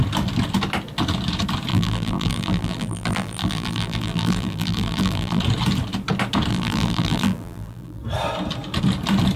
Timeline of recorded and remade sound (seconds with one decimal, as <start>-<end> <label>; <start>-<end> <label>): 0.0-1.7 recorded; 1.7-5.4 remade; 5.4-6.5 recorded; 6.5-8.0 remade; 8.0-9.4 recorded